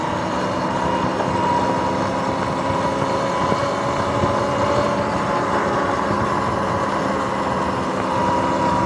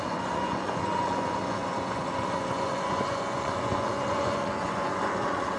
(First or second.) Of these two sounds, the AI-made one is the second